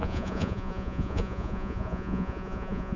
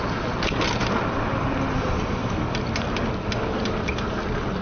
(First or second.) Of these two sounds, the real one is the second